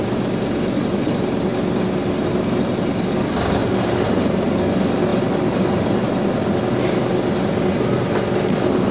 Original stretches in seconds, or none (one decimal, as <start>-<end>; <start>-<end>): 0.0-3.6; 4.1-8.9